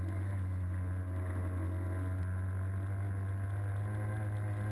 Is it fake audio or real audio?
real